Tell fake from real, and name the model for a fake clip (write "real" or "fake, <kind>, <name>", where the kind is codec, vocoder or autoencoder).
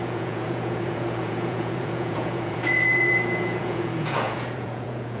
fake, vocoder, Vocos